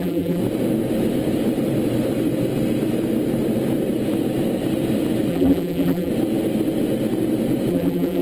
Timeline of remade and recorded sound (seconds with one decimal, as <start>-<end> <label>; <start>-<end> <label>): 0.0-0.4 remade; 0.4-5.3 recorded; 5.3-6.1 remade; 6.1-7.7 recorded; 7.7-8.2 remade